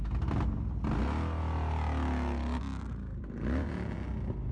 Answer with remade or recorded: recorded